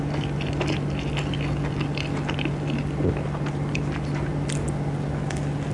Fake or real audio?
real